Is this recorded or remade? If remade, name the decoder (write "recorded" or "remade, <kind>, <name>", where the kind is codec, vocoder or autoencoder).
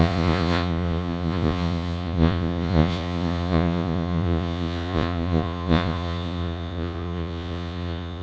remade, vocoder, Vocos